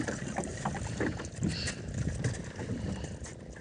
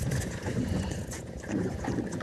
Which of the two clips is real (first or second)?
first